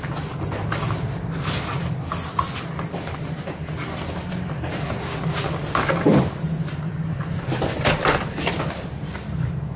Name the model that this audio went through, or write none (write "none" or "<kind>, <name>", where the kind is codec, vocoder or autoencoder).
none